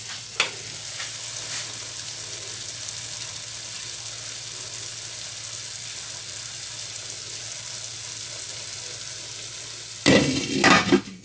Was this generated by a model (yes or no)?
no